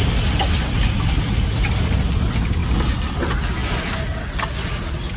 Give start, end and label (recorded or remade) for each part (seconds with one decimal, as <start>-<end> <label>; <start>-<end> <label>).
0.0-5.2 recorded